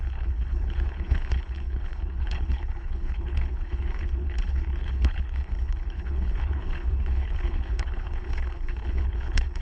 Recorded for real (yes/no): no